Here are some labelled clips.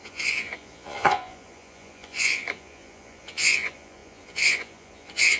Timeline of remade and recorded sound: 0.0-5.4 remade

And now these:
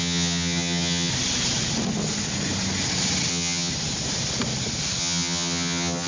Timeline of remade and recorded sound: 0.0-1.1 remade; 1.1-3.3 recorded; 3.3-3.7 remade; 3.7-5.0 recorded; 5.0-6.1 remade

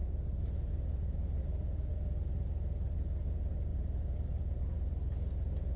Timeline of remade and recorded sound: 0.0-5.8 recorded

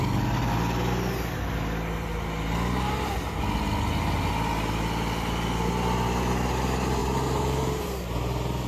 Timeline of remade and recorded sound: 0.0-7.0 recorded; 7.0-8.7 remade

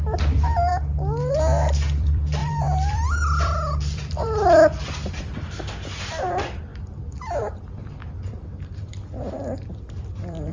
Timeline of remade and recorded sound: 0.0-0.7 remade; 0.7-1.3 recorded; 1.3-10.5 remade

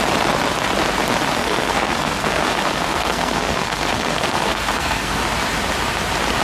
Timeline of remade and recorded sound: 0.0-1.4 recorded; 1.4-5.2 remade; 5.2-6.4 recorded

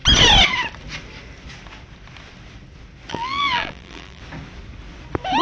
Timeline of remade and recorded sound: 0.0-3.1 recorded; 3.1-4.2 remade; 4.2-5.4 recorded